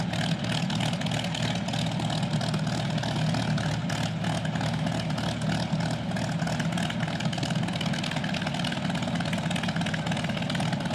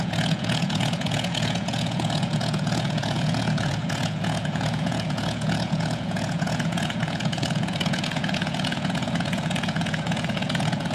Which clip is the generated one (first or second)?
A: second